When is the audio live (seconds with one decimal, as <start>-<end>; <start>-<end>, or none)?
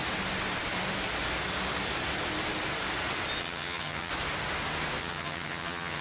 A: 0.0-3.4; 4.1-5.0